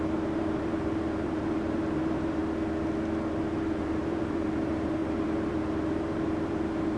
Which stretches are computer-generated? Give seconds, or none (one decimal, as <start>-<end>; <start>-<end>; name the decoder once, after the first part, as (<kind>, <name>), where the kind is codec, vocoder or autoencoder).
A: 0.0-2.4 (vocoder, BigVGAN v2); 3.5-7.0